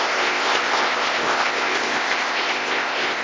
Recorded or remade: remade